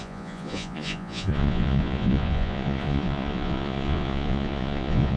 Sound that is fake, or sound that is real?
fake